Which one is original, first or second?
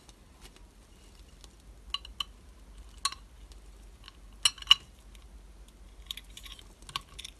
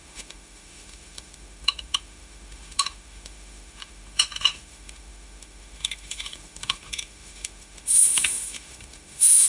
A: first